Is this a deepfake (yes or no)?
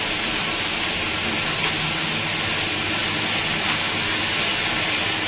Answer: no